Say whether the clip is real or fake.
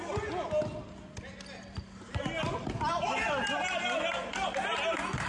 real